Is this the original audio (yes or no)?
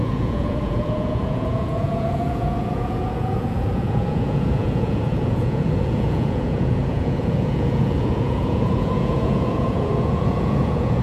no